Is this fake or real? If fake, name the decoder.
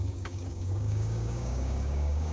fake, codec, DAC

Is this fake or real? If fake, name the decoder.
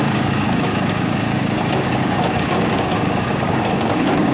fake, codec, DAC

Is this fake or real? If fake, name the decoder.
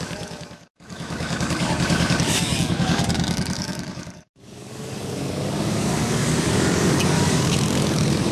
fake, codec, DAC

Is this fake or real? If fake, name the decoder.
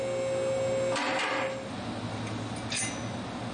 real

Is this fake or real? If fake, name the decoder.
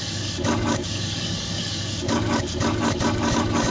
fake, codec, DAC